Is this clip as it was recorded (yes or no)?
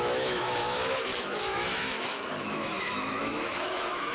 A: no